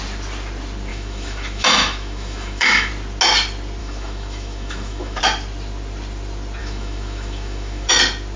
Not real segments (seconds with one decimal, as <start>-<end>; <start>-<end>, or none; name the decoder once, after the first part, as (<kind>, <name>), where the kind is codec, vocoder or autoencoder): 0.9-2.9 (autoencoder, DAC-VAE); 3.8-5.2; 6.6-7.9